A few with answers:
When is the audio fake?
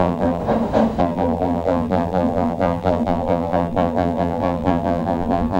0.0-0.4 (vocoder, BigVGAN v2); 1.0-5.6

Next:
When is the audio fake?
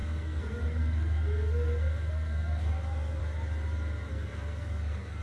0.0-3.2 (codec, SNAC); 4.1-5.2